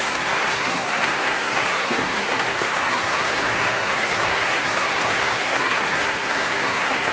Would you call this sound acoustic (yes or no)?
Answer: no